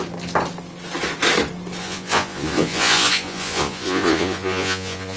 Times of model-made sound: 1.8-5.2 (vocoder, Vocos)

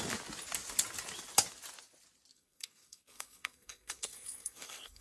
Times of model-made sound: 2.3-5.0 (codec, SNAC)

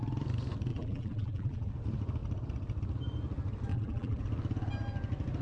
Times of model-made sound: 0.7-1.7 (vocoder, BigVGAN v2); 3.7-4.2

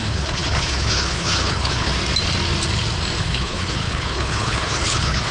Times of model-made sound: 0.0-1.9 (codec, HILCodec); 3.2-5.3

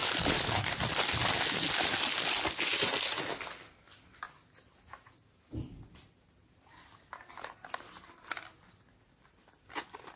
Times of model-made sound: none

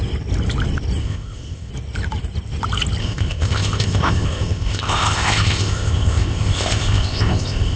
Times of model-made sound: 1.0-1.7 (codec, ZipCodec); 3.0-7.8

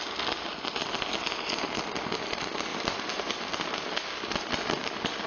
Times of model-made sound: 2.7-3.9 (vocoder, BigVGAN v2)